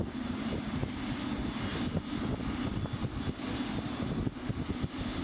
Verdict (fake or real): real